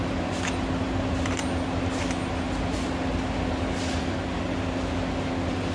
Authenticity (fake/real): real